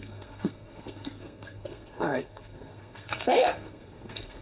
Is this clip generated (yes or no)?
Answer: yes